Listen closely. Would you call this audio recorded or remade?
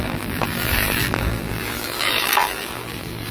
remade